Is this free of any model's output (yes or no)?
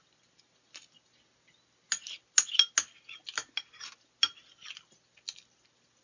yes